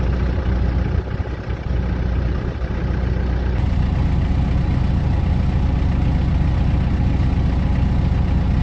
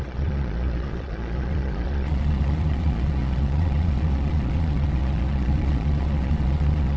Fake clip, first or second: second